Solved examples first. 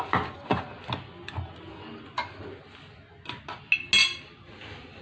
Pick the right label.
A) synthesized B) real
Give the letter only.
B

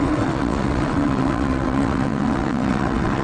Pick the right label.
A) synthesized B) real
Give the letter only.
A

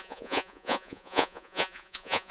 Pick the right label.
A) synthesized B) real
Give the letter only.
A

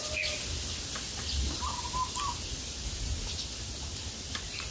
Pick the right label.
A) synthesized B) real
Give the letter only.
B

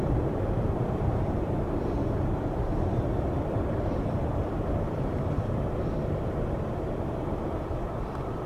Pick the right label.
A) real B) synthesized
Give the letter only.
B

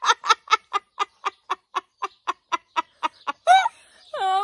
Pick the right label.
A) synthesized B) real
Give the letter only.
B